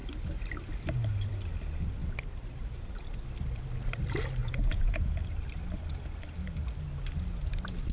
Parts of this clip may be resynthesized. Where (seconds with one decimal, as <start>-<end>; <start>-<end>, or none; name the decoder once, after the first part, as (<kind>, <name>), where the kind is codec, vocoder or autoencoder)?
4.4-5.2 (vocoder, Vocos)